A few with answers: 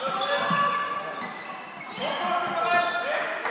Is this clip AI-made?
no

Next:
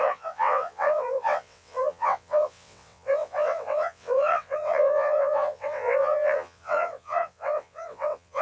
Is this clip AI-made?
yes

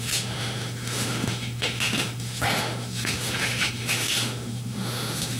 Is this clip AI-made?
yes